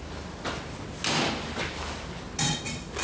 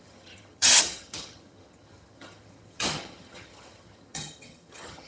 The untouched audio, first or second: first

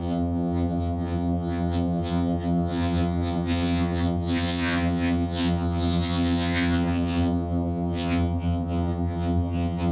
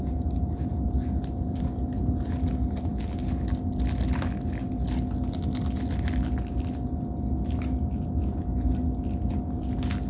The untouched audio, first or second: second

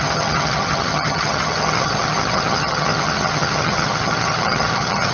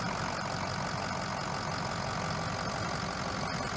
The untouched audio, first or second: second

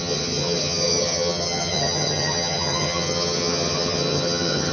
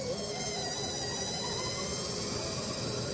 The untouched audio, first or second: second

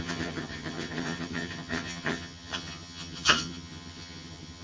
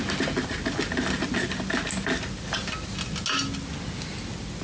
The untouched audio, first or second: second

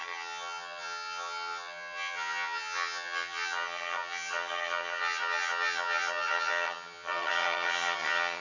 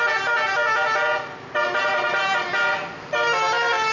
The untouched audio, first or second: second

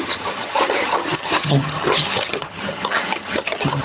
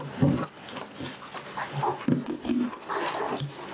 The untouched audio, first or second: second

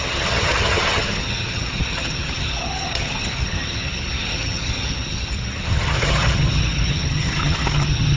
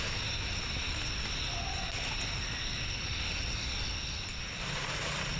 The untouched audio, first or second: second